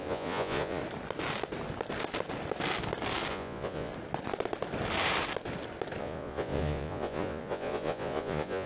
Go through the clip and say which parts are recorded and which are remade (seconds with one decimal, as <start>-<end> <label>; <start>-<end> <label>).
0.0-0.8 remade; 0.8-3.3 recorded; 3.3-3.9 remade; 3.9-6.0 recorded; 6.0-8.7 remade